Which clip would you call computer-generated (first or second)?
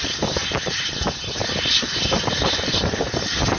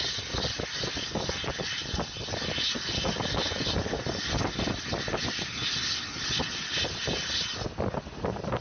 first